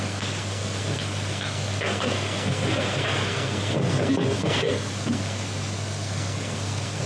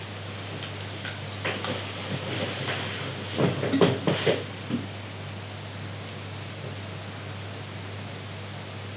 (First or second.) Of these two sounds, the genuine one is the second